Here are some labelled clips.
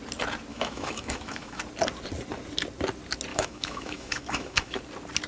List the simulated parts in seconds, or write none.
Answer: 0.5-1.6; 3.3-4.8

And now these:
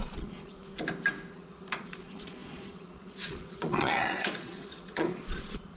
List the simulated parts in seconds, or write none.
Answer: 0.0-0.6; 1.3-5.8

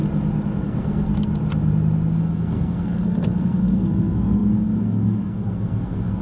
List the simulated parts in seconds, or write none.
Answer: 0.6-1.3; 2.2-6.2

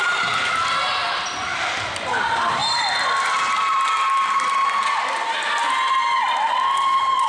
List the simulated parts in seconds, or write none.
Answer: none

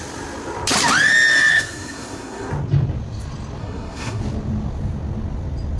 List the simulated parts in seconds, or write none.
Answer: 1.5-2.5; 3.6-4.2

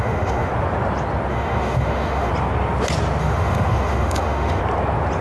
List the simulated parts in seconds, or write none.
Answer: 0.0-0.5; 1.3-2.3; 3.2-4.6